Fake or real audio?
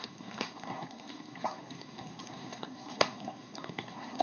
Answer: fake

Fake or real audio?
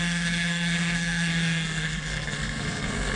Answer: fake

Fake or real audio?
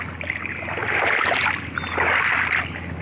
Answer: real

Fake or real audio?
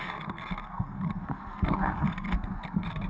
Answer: fake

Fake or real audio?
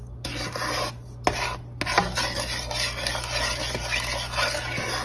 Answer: real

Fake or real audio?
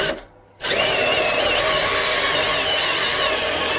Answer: real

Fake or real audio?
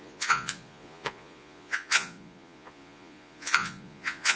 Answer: fake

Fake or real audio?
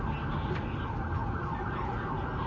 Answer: real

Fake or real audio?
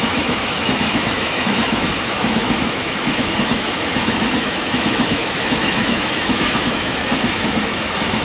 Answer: fake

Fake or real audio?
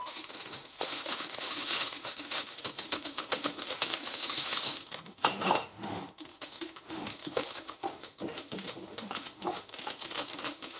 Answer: fake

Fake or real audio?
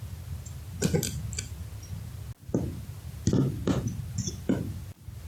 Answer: real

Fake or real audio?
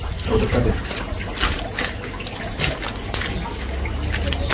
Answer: real